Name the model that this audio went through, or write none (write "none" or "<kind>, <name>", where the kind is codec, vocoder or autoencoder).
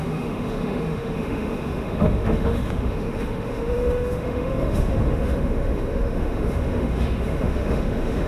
autoencoder, DAC-VAE